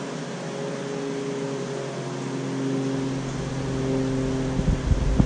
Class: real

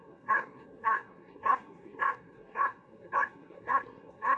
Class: fake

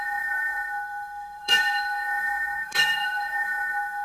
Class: fake